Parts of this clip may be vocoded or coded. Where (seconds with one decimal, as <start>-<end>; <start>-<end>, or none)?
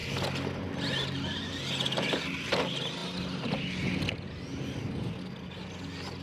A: none